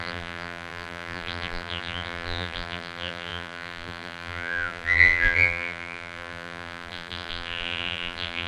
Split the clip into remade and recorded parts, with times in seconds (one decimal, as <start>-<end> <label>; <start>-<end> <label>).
0.0-8.5 remade